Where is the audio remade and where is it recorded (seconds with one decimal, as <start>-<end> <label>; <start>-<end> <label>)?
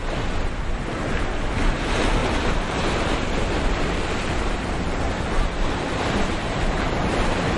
0.0-2.2 recorded; 2.2-6.8 remade; 6.8-7.6 recorded